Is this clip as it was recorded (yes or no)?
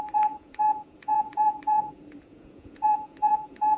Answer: no